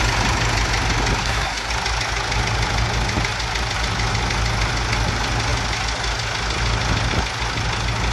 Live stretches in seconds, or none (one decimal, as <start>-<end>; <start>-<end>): 0.0-1.2; 1.7-8.1